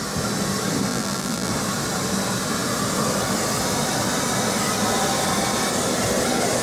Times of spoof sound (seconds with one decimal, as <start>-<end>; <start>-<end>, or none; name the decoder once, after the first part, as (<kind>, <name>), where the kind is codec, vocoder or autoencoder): 0.9-1.5 (vocoder, BigVGAN v2)